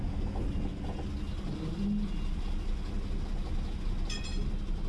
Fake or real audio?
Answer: real